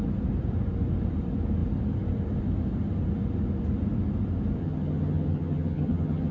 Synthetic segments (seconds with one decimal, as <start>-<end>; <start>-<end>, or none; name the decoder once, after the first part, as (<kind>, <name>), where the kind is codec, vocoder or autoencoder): 4.6-6.3 (vocoder, HiFi-GAN)